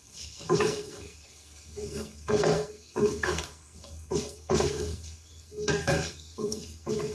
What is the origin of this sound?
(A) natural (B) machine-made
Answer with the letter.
B